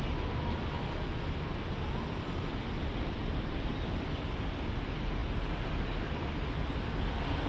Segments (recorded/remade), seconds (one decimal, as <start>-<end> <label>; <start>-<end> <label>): 0.0-3.2 recorded; 3.2-3.7 remade; 3.7-7.5 recorded